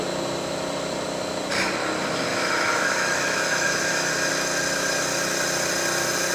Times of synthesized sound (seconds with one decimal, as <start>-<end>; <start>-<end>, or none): 2.3-4.1

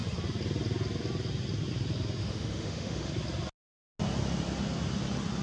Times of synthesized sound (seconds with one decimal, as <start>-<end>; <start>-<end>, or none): 2.2-3.1

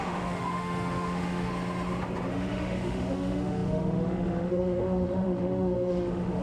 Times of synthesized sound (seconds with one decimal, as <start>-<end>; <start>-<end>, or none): 0.0-1.5; 2.3-6.4

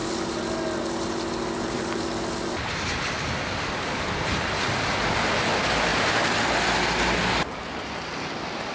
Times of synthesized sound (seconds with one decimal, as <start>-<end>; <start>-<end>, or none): none

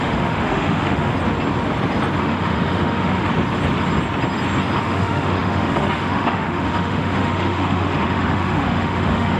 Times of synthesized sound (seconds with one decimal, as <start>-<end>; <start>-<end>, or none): 0.0-1.1; 2.2-3.3; 4.8-9.4

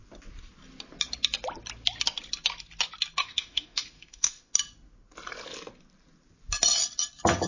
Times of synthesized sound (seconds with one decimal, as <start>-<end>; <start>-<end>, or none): 3.2-4.5

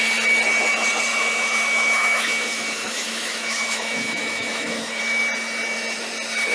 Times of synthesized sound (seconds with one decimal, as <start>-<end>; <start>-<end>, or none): 1.1-5.0